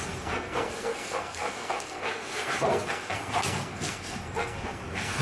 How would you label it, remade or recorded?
remade